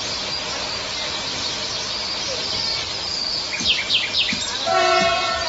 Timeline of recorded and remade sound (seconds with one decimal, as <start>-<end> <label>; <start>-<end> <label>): 0.0-2.4 recorded; 2.4-3.1 remade; 3.1-5.5 recorded